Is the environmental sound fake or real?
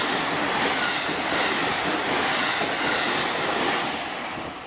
real